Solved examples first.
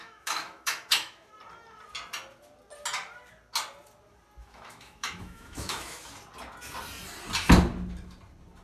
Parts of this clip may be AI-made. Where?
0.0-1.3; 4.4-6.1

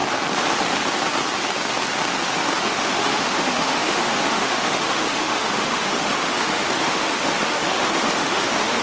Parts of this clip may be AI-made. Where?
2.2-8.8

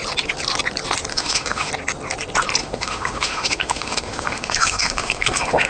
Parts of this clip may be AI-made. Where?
1.1-1.7; 2.6-5.7

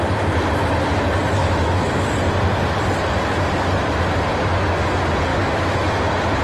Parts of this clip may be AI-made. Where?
1.4-2.1; 5.3-6.0